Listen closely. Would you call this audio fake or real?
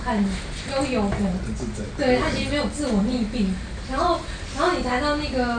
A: real